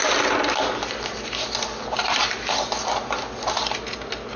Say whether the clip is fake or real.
real